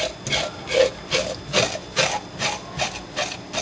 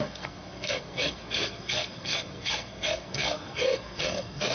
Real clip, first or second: first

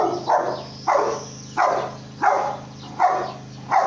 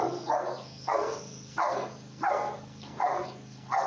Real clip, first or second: first